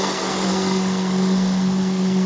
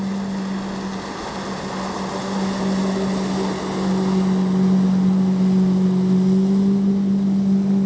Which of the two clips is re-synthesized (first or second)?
first